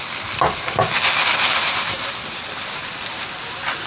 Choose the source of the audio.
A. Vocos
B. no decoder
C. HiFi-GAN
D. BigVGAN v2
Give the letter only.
B